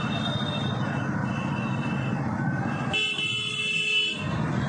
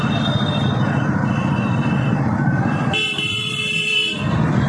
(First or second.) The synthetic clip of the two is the second